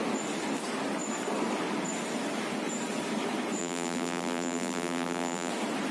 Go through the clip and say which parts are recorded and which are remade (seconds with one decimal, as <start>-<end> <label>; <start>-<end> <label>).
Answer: 0.0-3.6 recorded; 3.6-5.5 remade; 5.5-5.9 recorded

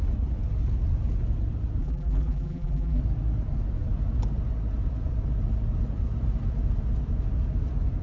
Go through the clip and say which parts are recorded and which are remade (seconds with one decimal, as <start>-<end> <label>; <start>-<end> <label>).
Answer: 0.0-1.8 recorded; 1.8-3.0 remade; 3.0-8.0 recorded

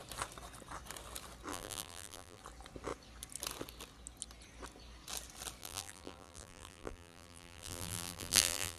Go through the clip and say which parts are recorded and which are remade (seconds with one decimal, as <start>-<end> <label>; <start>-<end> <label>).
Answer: 0.0-1.5 recorded; 1.5-2.4 remade; 2.4-5.6 recorded; 5.6-8.8 remade

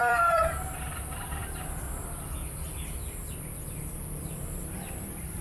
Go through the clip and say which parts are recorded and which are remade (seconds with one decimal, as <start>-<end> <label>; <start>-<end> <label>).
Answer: 0.0-1.4 remade; 1.4-4.6 recorded; 4.6-5.4 remade